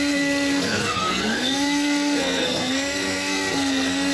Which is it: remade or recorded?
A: remade